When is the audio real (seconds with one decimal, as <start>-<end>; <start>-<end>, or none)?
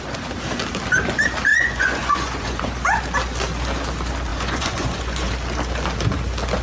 0.0-1.5; 2.6-4.3; 5.3-6.6